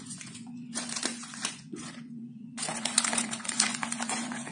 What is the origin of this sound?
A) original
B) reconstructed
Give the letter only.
B